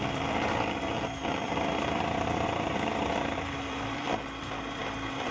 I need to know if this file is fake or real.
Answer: fake